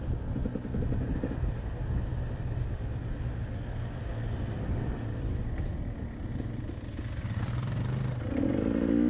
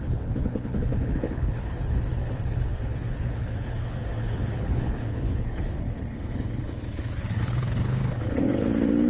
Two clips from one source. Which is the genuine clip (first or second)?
first